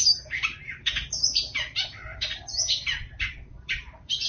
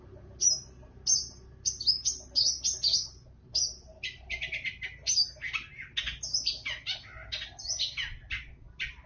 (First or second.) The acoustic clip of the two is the second